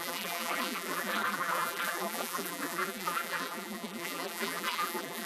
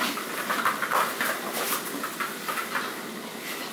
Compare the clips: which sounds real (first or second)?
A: second